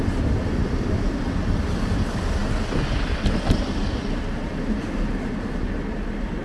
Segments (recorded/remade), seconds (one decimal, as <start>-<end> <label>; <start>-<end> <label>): 0.0-6.4 recorded